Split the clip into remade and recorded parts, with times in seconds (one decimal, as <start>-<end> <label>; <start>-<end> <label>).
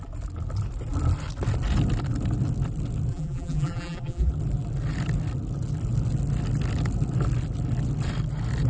0.0-3.1 recorded; 3.1-4.3 remade; 4.3-8.7 recorded